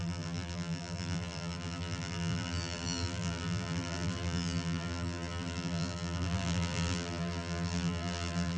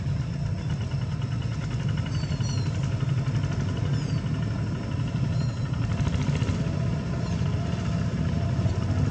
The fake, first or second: first